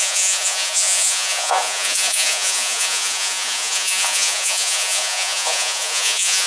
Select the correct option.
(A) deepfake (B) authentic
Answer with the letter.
A